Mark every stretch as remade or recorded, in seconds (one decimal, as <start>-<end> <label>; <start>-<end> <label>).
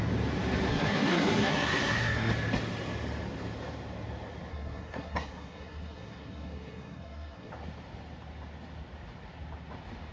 0.0-0.7 recorded; 0.7-2.3 remade; 2.3-4.5 recorded; 4.5-7.5 remade; 7.5-10.1 recorded